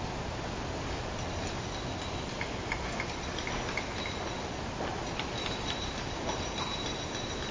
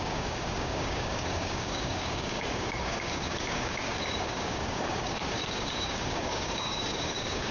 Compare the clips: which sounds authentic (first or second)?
first